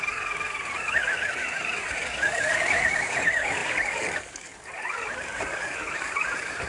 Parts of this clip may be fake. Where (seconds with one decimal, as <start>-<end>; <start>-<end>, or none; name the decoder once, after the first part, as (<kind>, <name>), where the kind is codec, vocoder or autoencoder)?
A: 0.0-6.7 (codec, DAC)